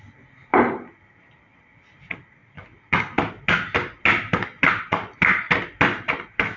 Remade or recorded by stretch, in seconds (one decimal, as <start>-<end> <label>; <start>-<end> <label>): 0.0-0.5 recorded; 0.5-2.0 remade; 2.0-6.6 recorded